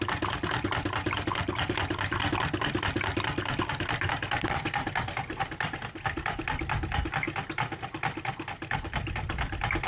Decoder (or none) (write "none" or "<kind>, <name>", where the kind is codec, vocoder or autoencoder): none